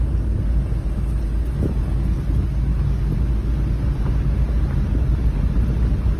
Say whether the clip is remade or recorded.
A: recorded